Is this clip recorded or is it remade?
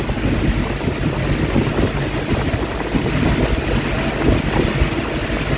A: recorded